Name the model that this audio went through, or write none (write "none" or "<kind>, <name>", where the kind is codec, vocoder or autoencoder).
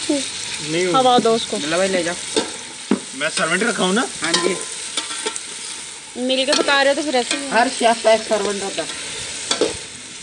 none